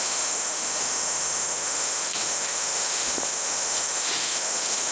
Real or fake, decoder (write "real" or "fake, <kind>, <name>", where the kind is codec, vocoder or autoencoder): fake, autoencoder, DAC-VAE